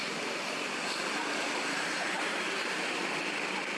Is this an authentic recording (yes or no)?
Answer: yes